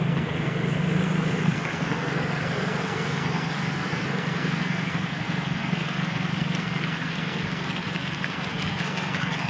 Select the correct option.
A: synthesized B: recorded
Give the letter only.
A